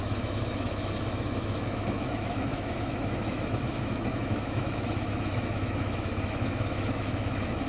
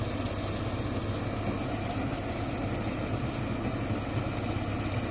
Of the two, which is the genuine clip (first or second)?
second